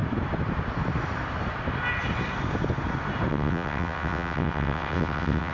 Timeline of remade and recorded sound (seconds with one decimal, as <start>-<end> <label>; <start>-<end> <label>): 0.0-3.3 recorded; 3.3-5.5 remade